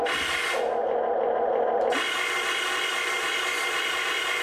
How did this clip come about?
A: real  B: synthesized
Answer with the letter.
A